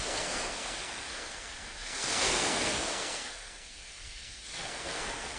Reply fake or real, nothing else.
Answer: fake